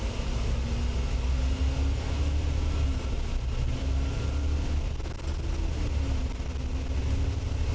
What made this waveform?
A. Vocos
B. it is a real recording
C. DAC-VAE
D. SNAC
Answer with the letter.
B